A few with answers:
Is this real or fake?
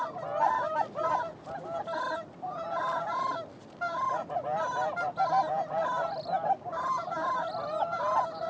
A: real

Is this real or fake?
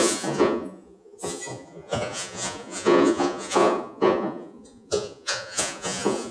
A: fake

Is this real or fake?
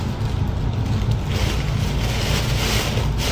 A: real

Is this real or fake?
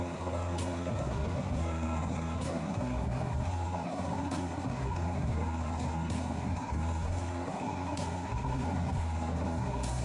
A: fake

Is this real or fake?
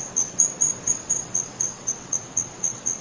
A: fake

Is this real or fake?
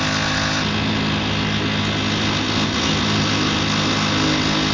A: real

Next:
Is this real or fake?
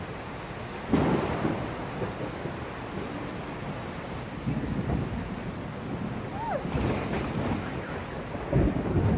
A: real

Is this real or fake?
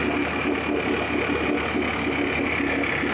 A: real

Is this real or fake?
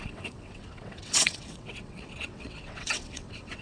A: fake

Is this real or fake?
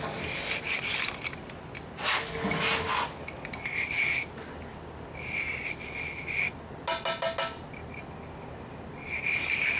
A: real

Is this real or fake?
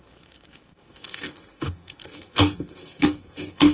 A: fake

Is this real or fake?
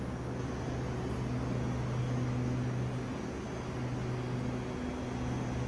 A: real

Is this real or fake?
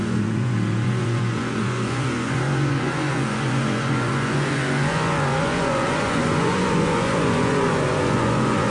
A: fake